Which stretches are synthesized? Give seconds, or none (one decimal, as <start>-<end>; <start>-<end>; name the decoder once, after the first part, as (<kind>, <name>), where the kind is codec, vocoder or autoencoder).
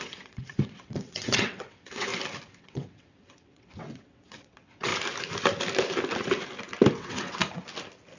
0.0-2.1 (vocoder, WaveNeXt); 2.6-4.9; 6.9-7.4